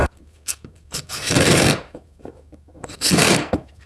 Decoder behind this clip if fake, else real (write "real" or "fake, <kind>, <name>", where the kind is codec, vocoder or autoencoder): fake, codec, SNAC